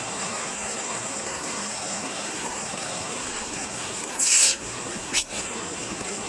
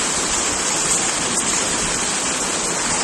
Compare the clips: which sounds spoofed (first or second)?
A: first